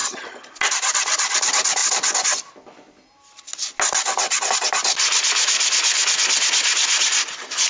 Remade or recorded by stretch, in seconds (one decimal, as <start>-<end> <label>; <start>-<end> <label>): 0.0-0.5 remade; 0.5-7.7 recorded